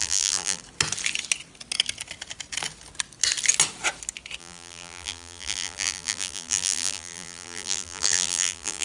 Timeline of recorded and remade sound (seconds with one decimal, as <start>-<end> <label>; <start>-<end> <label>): 0.0-0.6 remade; 0.6-4.4 recorded; 4.4-8.8 remade